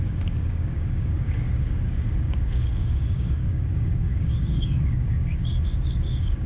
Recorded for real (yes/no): no